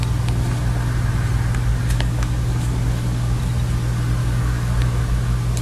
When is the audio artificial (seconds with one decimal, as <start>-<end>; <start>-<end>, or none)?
1.7-3.4; 4.2-5.0